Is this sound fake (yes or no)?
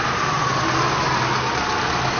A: no